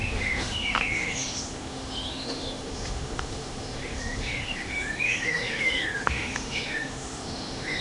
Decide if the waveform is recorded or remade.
remade